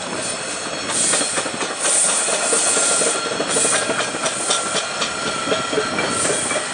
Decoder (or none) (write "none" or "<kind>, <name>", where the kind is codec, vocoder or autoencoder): none